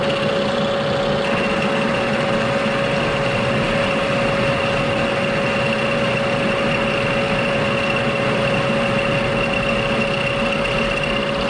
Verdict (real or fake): real